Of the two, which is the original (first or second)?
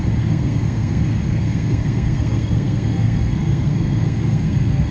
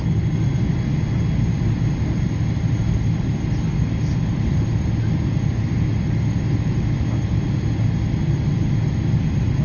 second